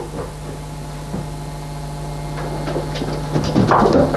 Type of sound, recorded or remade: recorded